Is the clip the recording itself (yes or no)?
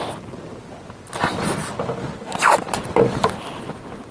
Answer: yes